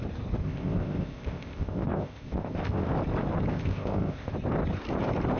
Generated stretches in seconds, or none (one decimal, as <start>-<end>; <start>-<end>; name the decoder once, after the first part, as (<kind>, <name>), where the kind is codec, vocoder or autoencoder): 0.4-2.9 (codec, ZipCodec); 3.5-4.3